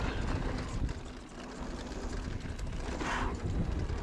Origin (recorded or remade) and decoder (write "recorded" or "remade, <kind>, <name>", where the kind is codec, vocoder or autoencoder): recorded